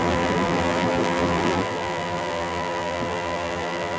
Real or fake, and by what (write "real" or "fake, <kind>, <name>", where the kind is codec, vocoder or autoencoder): fake, vocoder, BigVGAN v2